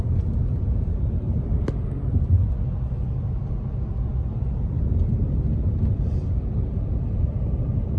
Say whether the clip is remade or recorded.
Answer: recorded